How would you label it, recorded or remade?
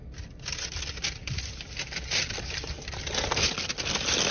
recorded